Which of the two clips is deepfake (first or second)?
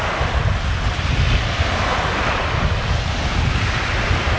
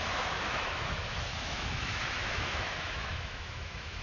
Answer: second